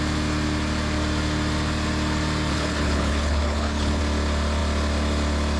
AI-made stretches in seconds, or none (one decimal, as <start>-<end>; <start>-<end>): 2.5-4.0